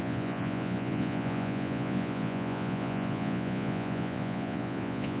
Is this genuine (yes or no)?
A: no